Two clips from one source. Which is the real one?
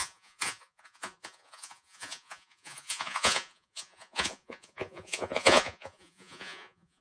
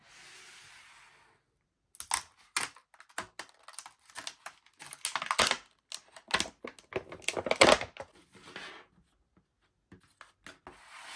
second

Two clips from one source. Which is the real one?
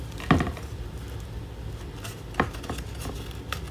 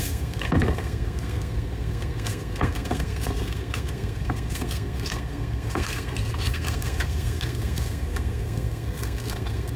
first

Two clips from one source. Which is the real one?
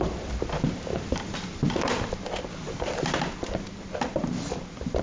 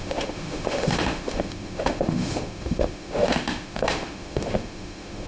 first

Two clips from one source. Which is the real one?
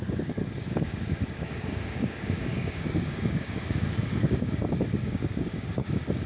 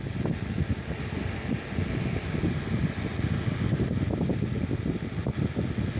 second